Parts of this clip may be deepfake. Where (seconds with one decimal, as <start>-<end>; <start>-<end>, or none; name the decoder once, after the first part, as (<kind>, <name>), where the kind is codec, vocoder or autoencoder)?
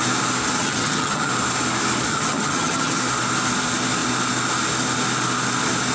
0.6-1.3 (vocoder, HiFi-GAN); 2.1-3.0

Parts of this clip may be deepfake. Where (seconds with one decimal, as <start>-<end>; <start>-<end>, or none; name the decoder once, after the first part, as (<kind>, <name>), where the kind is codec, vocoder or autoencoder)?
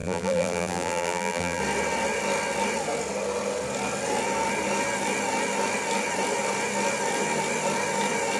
0.0-1.6 (vocoder, BigVGAN v2)